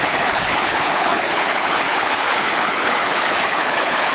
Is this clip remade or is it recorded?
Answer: remade